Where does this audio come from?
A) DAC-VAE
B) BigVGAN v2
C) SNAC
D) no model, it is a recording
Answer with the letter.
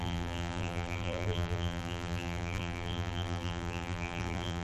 B